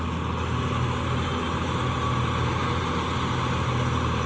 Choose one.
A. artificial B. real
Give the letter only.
B